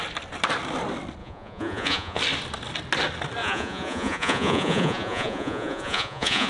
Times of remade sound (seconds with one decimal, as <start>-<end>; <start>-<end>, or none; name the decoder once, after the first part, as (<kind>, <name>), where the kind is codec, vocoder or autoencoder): 1.2-2.2 (vocoder, Vocos); 3.4-6.5